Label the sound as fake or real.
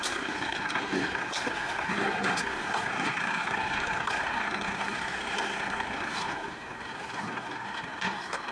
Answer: fake